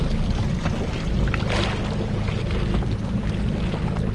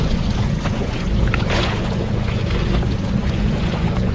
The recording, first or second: first